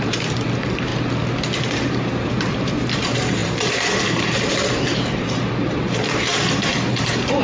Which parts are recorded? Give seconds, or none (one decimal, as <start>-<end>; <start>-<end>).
0.9-1.7